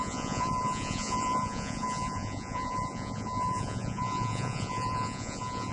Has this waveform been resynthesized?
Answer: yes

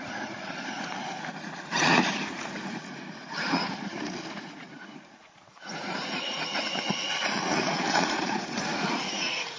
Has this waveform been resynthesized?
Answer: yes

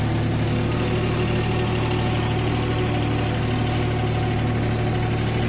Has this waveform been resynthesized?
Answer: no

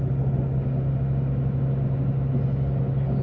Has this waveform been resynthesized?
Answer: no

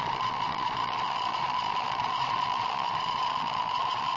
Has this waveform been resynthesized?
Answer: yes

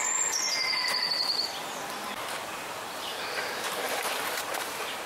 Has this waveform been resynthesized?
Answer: no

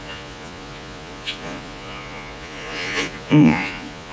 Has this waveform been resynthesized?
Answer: yes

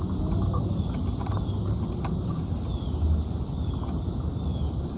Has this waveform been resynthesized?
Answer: no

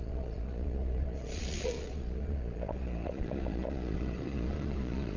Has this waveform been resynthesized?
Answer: yes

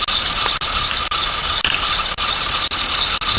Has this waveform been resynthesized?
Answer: no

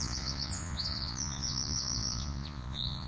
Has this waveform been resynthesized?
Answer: yes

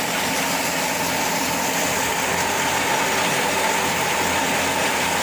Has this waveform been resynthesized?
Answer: no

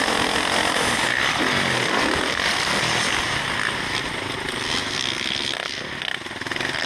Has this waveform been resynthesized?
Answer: no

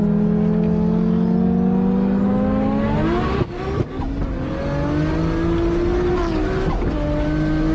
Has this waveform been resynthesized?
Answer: no